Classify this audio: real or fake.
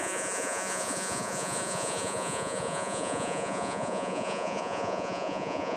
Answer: fake